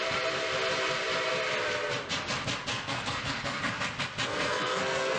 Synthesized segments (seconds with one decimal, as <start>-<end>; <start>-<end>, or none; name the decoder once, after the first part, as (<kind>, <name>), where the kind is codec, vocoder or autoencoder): 2.7-3.6 (codec, SNAC); 4.3-5.2